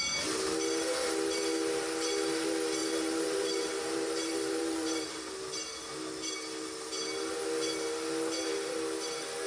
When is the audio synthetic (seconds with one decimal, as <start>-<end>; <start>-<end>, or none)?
2.8-5.2